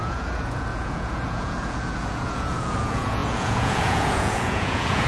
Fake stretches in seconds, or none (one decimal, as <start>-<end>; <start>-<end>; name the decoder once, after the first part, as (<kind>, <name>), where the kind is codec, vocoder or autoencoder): 0.0-5.1 (vocoder, Vocos)